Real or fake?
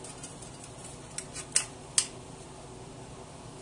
real